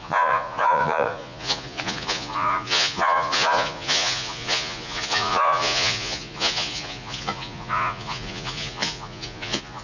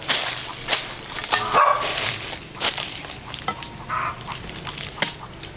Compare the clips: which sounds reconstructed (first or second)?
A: first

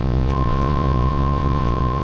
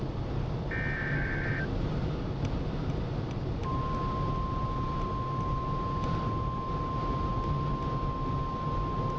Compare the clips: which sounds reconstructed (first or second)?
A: first